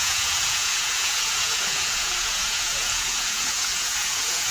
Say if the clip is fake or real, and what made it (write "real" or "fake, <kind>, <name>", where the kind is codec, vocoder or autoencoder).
fake, vocoder, Vocos